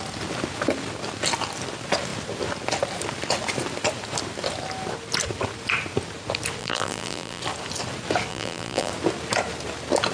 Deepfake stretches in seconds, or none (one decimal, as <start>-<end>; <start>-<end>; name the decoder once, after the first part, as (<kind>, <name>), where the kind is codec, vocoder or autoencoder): 6.6-7.4 (vocoder, BigVGAN v2); 8.3-8.9